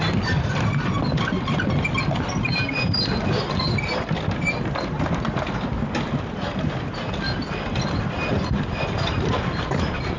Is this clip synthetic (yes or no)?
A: no